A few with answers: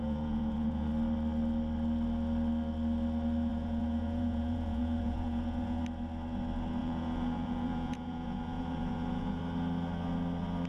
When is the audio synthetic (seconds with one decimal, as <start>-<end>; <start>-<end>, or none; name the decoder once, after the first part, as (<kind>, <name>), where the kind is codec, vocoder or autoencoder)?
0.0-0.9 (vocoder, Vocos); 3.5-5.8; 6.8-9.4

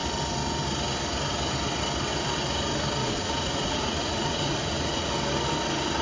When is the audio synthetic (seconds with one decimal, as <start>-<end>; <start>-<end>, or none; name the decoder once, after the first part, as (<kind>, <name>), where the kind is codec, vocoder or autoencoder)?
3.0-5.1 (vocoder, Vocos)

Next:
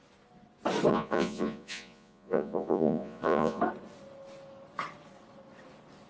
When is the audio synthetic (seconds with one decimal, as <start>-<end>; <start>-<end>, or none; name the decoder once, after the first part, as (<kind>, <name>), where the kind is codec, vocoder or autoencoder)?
0.9-3.6 (vocoder, Vocos)

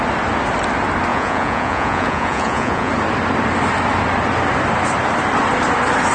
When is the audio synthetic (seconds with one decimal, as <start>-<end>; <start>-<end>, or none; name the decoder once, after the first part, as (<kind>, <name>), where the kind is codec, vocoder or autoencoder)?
1.1-2.9 (vocoder, Vocos)

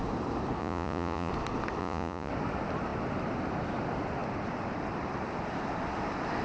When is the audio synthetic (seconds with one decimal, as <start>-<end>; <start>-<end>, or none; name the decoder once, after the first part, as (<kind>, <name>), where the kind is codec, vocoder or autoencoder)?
0.6-1.3 (vocoder, Vocos); 1.8-2.3